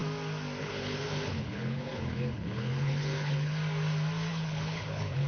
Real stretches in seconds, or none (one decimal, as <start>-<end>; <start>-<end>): 0.0-0.6; 3.5-4.3